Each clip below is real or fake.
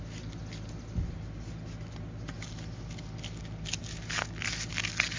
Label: real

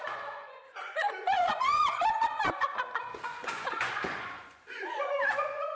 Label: fake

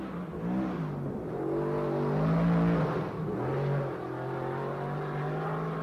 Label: real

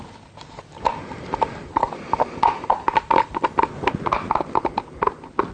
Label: real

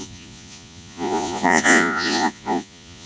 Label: fake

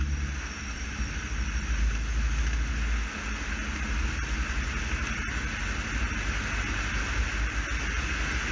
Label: real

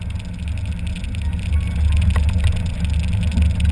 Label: real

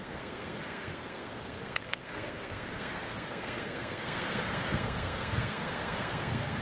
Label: fake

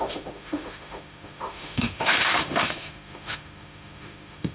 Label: fake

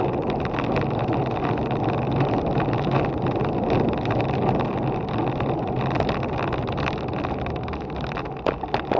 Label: real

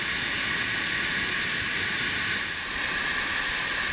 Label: real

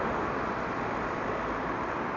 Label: real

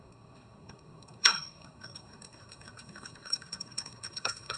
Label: fake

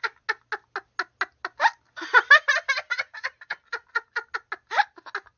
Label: real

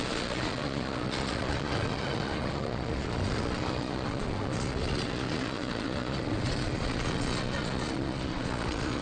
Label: fake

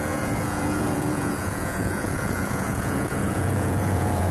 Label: fake